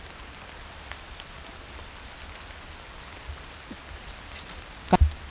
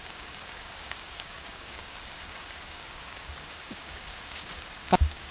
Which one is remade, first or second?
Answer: second